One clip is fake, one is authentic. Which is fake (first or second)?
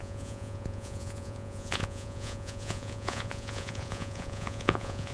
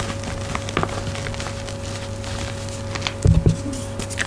first